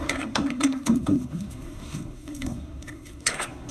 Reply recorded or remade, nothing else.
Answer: remade